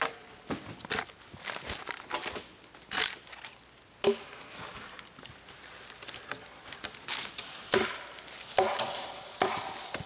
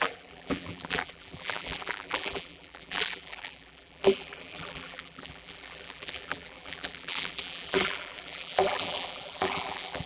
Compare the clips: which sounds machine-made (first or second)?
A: second